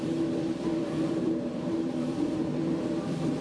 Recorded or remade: remade